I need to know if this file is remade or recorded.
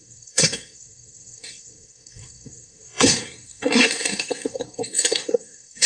remade